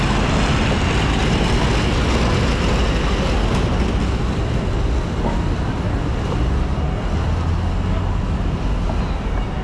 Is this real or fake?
real